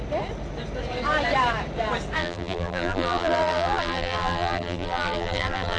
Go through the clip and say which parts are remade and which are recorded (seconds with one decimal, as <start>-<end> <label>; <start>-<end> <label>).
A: 0.0-2.2 recorded; 2.2-5.8 remade

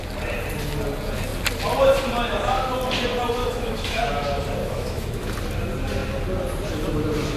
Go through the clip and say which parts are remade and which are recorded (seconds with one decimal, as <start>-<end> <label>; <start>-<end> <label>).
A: 0.0-3.4 recorded; 3.4-4.0 remade; 4.0-4.6 recorded; 4.6-5.4 remade; 5.4-7.4 recorded

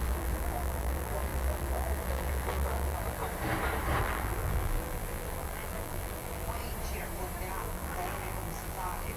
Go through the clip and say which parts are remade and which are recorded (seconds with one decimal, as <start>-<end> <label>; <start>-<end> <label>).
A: 0.0-3.2 remade; 3.2-4.0 recorded; 4.0-6.6 remade; 6.6-7.5 recorded; 7.5-9.2 remade